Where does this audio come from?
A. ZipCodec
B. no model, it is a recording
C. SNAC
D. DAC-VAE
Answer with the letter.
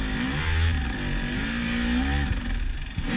B